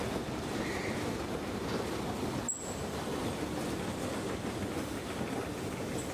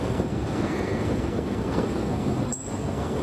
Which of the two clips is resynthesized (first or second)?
second